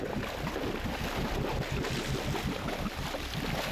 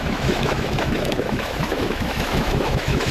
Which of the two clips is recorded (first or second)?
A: first